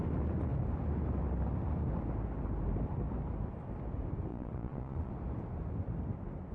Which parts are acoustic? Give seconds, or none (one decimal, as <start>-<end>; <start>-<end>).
0.0-4.3; 5.1-6.5